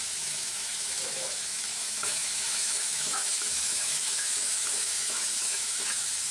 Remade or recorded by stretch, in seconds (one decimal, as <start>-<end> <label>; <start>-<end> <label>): 0.0-6.3 remade